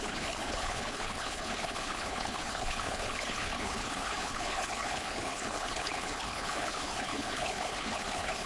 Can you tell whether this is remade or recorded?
remade